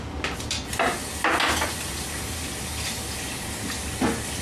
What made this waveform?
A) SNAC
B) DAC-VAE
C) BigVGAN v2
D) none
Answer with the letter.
D